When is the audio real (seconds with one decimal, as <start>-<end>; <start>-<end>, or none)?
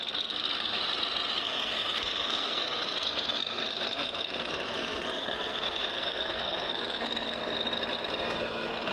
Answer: 0.8-1.4; 7.4-8.2